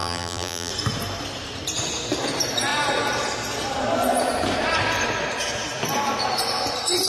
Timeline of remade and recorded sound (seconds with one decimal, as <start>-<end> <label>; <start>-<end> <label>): 0.0-0.7 remade; 0.7-7.1 recorded